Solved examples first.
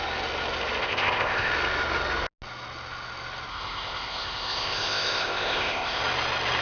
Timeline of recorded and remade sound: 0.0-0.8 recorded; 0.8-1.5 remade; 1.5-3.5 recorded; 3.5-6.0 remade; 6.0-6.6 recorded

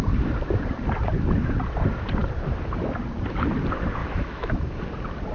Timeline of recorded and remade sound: 0.0-4.0 recorded; 4.0-4.5 remade; 4.5-5.3 recorded

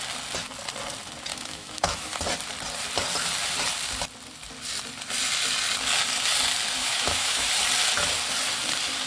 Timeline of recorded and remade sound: 0.0-1.3 recorded; 1.3-2.2 remade; 2.2-6.8 recorded; 6.8-7.5 remade; 7.5-9.1 recorded

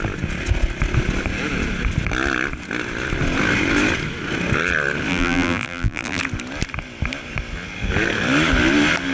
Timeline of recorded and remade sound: 0.0-5.1 recorded; 5.1-6.2 remade; 6.2-9.1 recorded

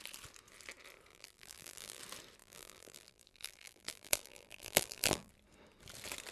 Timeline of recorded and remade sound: 0.0-1.1 recorded; 1.1-2.0 remade; 2.0-2.4 recorded; 2.4-5.3 remade; 5.3-6.3 recorded

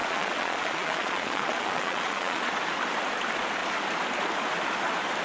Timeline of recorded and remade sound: 0.0-2.5 remade; 2.5-5.2 recorded

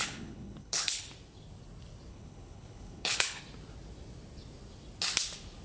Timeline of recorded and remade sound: 0.0-1.1 remade; 1.1-2.1 recorded; 2.1-3.4 remade; 3.4-5.6 recorded